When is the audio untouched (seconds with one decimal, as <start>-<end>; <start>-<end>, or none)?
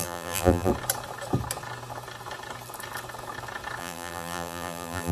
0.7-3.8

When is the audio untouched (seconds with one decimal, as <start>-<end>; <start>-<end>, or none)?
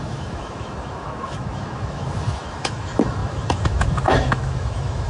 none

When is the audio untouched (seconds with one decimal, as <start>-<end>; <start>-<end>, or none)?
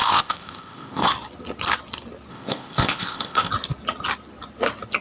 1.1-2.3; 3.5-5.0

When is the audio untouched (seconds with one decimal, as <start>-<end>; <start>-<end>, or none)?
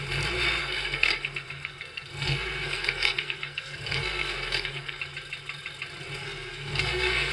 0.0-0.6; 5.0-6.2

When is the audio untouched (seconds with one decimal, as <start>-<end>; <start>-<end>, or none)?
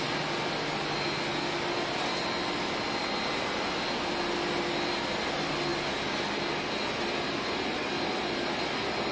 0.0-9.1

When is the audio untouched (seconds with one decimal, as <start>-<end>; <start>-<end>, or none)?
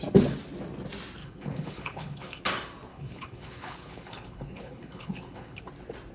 0.0-1.2; 2.4-2.9; 5.6-6.1